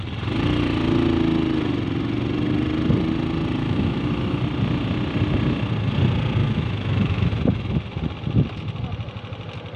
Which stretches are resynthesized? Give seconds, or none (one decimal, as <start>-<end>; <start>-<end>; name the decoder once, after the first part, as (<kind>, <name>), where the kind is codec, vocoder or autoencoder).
3.6-4.4 (autoencoder, DAC-VAE); 6.4-7.3